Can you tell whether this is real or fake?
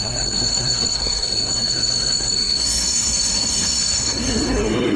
fake